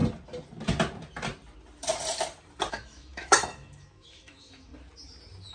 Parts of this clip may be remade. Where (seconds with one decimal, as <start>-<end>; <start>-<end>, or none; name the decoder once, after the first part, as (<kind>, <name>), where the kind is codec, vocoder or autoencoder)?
2.7-4.7 (autoencoder, DAC-VAE)